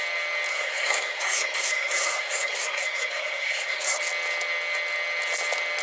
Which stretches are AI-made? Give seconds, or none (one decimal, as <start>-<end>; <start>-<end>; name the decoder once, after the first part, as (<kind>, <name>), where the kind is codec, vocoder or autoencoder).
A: 0.5-4.0 (codec, SNAC)